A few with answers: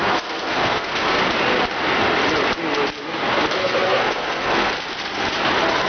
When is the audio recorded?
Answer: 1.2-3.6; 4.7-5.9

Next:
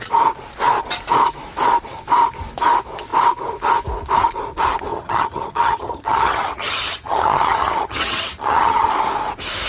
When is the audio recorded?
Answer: 0.0-4.9; 8.9-9.7